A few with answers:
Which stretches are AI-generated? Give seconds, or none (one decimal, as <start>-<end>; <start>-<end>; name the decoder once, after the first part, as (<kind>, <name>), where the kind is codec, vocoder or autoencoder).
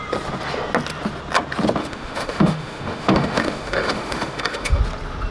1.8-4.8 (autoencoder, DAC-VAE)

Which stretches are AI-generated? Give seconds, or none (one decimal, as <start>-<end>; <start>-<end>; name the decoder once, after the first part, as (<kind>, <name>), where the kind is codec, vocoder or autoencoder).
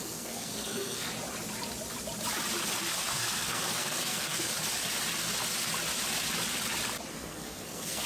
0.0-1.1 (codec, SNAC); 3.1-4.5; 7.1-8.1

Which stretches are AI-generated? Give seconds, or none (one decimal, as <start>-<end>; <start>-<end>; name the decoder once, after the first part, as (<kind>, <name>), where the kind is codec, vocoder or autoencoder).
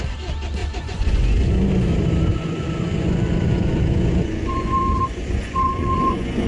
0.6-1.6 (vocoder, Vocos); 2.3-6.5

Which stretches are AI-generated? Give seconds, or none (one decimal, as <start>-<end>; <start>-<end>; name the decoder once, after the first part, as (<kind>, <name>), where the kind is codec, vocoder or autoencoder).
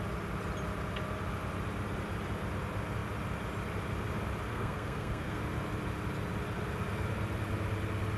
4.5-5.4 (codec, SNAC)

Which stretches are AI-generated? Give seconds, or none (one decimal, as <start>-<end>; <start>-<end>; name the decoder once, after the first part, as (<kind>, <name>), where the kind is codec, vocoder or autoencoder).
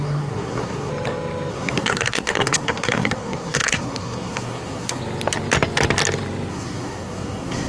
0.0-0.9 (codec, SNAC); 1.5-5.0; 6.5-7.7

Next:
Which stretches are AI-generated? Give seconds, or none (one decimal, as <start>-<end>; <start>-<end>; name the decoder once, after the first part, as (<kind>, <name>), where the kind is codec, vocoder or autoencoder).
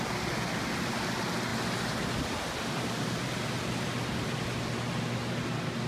none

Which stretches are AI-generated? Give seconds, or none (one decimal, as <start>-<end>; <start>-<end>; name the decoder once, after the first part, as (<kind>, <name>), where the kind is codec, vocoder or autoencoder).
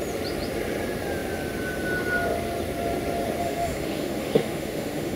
3.4-5.2 (autoencoder, DAC-VAE)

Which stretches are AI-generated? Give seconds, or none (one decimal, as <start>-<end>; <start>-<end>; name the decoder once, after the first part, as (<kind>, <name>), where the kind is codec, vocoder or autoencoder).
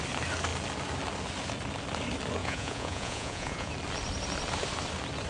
2.4-3.7 (vocoder, Vocos)